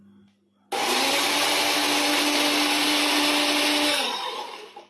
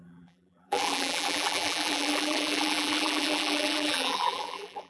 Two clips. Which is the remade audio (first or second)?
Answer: second